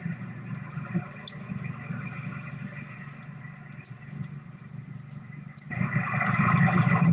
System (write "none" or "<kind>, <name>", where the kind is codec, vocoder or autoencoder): none